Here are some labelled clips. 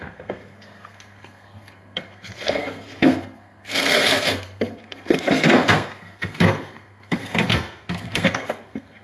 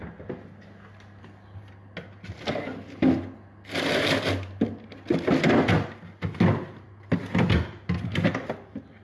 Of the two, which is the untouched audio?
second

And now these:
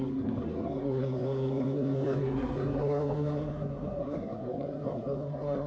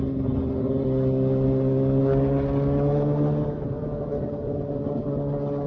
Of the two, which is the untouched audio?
second